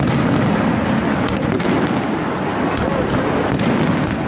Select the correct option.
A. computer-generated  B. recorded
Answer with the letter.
B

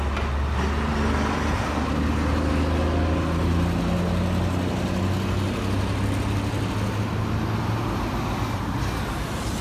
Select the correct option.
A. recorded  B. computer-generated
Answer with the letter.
A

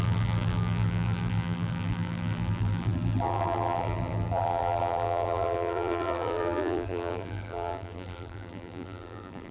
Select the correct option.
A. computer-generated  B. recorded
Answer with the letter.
A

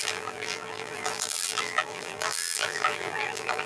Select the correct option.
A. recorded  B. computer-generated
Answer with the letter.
B